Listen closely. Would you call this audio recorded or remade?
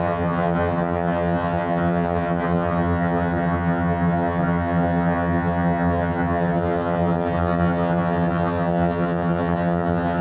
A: remade